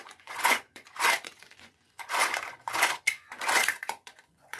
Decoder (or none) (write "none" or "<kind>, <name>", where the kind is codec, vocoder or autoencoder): vocoder, Vocos